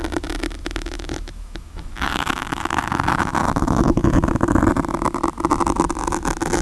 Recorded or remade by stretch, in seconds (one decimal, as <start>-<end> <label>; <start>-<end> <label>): 0.0-0.6 recorded; 0.6-4.6 remade; 4.6-6.6 recorded